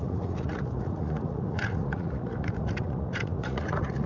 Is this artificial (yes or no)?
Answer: yes